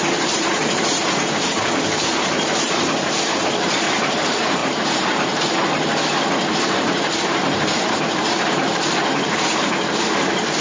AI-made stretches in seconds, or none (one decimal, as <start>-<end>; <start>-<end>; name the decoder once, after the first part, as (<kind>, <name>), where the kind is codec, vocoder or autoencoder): 0.0-5.9 (vocoder, BigVGAN v2); 6.7-10.6